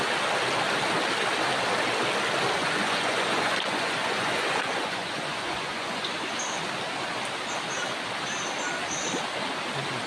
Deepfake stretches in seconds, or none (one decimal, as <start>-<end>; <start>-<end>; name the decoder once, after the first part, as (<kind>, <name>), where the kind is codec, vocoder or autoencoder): 2.6-6.4 (vocoder, Vocos)